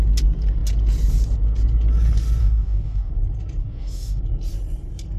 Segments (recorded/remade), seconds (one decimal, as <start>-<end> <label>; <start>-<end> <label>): 0.0-2.4 recorded; 2.4-3.1 remade; 3.1-3.6 recorded; 3.6-4.2 remade; 4.2-5.2 recorded